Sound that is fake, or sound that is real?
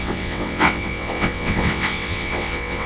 fake